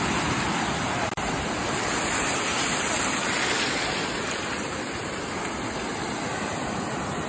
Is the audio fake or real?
real